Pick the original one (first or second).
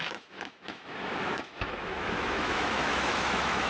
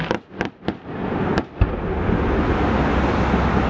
second